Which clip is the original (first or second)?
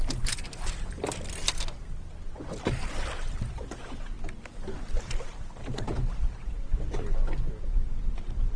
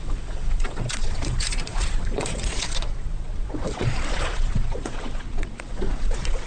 first